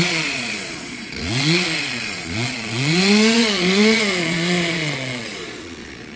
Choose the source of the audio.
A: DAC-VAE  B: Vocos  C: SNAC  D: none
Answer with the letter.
B